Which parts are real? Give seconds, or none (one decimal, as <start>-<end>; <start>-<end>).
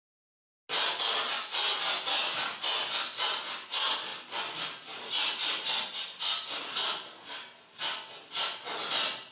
0.0-9.3